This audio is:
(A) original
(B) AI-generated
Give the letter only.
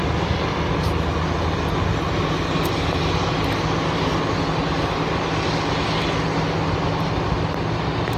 A